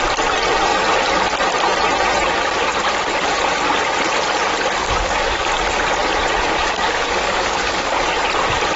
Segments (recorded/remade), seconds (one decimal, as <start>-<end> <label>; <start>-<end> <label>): 0.0-4.8 recorded; 4.8-5.4 remade; 5.4-6.6 recorded; 6.6-8.1 remade; 8.1-8.8 recorded